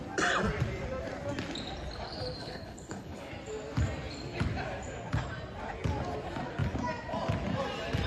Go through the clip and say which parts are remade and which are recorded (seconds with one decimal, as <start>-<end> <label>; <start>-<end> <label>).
0.0-2.4 recorded; 2.4-3.3 remade; 3.3-8.1 recorded